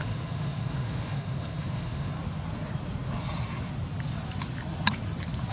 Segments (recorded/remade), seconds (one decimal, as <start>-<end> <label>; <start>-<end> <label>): 0.0-2.1 remade; 2.1-5.5 recorded